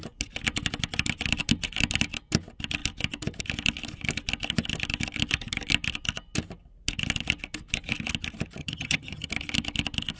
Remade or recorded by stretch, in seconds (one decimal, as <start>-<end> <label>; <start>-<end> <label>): 0.0-8.6 recorded; 8.6-9.3 remade; 9.3-10.2 recorded